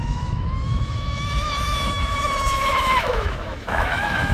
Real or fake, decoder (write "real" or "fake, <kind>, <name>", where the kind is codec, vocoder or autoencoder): fake, autoencoder, DAC-VAE